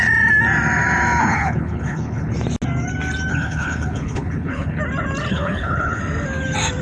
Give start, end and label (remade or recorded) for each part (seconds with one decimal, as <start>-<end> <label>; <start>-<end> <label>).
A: 0.0-1.2 recorded; 1.2-2.3 remade; 2.3-3.3 recorded; 3.3-4.8 remade; 4.8-5.3 recorded; 5.3-6.0 remade; 6.0-6.8 recorded